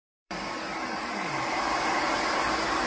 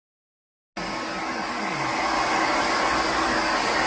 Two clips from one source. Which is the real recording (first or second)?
second